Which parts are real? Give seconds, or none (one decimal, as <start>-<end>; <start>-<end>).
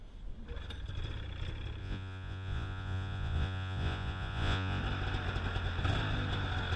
0.0-1.8; 4.8-6.8